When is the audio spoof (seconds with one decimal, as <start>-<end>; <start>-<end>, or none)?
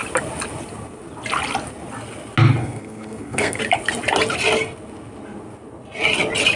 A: 2.6-3.6